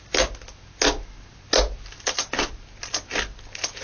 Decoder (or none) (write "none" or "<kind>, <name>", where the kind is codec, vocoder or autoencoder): none